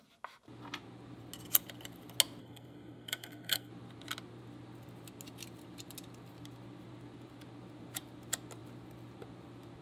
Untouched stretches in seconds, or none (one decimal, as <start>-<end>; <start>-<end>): 0.0-2.4; 3.7-9.8

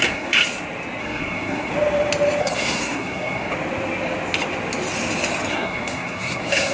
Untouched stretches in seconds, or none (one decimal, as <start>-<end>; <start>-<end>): 0.4-1.0; 1.7-2.4; 3.5-5.5

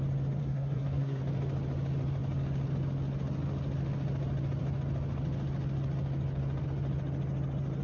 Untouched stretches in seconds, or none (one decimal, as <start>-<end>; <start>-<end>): 0.0-0.4; 1.2-7.8

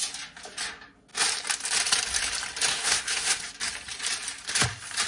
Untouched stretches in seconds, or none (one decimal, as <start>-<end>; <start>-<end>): 0.0-2.7; 3.4-5.1

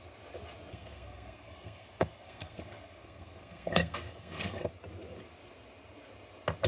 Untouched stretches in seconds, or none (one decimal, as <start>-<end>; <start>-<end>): 0.0-0.7; 4.7-6.7

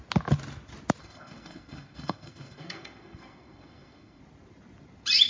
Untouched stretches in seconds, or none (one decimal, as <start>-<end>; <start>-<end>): 0.0-1.0; 4.2-5.3

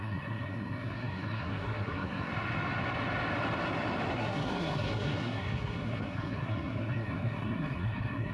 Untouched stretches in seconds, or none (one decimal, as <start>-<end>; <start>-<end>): 2.3-4.1

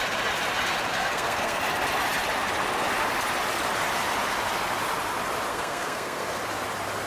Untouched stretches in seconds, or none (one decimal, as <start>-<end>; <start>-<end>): 0.0-0.9; 1.6-5.5; 6.4-7.1